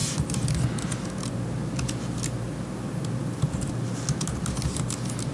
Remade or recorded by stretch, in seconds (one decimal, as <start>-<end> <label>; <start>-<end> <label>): 0.0-5.3 recorded